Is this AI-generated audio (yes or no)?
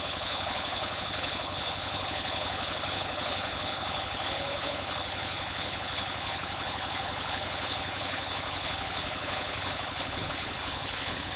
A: yes